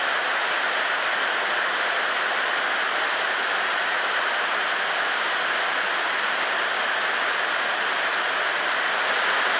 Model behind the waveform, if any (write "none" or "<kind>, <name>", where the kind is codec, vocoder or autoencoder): none